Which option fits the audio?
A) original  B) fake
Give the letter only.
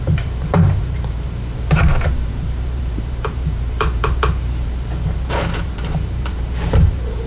B